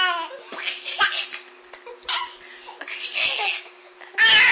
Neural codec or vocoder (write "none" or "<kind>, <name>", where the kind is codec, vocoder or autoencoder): none